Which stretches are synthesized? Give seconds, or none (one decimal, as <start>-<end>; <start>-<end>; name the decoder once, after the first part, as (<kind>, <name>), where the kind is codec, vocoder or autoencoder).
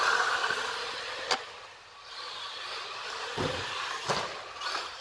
0.0-0.4 (vocoder, BigVGAN v2); 3.4-4.0; 4.6-5.0